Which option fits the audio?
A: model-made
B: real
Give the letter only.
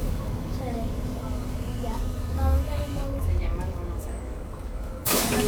A